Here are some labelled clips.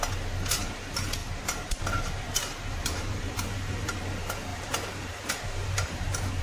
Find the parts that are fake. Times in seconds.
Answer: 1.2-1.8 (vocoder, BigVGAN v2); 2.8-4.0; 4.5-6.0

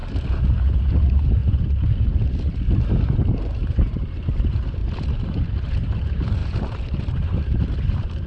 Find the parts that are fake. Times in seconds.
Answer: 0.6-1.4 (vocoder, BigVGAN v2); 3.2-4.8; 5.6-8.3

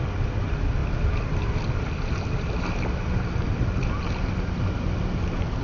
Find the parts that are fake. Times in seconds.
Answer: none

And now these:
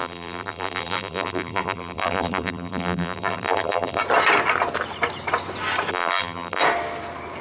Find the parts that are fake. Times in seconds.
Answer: 0.0-4.0 (vocoder, BigVGAN v2); 5.9-6.6